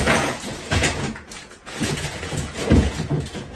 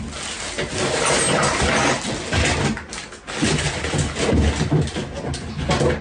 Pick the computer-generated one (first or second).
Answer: first